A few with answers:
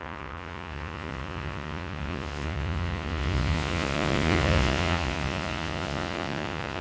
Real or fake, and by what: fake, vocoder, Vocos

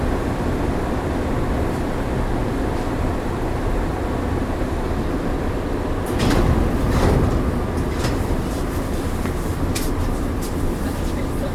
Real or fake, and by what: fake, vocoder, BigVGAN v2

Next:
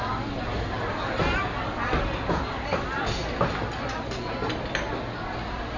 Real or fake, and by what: real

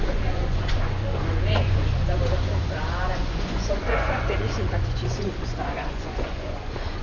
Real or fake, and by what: fake, vocoder, Vocos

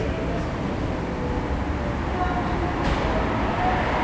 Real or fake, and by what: real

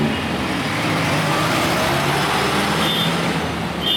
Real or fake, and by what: real